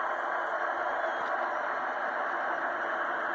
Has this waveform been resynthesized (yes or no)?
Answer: no